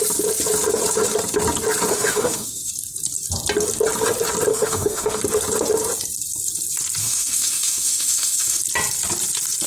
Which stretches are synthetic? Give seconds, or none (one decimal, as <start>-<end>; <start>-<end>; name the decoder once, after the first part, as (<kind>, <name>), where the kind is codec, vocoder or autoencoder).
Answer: 1.9-2.7 (autoencoder, DAC-VAE); 4.5-5.2; 7.0-8.6